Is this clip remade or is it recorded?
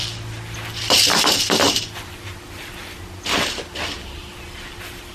recorded